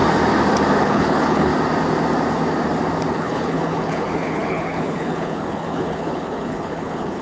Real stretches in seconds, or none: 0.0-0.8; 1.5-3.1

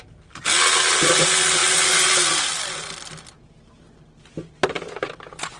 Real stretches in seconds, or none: 0.0-5.6

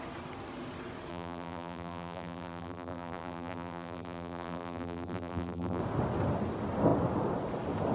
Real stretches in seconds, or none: 0.0-1.1; 5.8-7.9